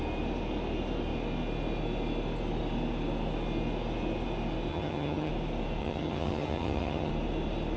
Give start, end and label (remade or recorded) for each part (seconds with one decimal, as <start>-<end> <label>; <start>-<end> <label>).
0.0-4.7 recorded; 4.7-5.3 remade; 5.3-5.8 recorded; 5.8-7.1 remade; 7.1-7.8 recorded